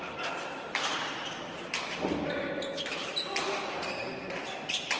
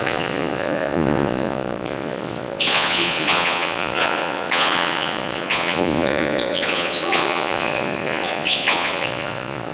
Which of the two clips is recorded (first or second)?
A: first